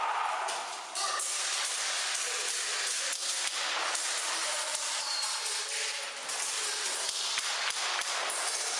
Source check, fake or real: real